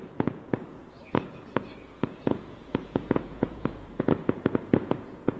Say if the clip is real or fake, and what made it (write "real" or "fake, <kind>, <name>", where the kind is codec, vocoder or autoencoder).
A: fake, vocoder, Vocos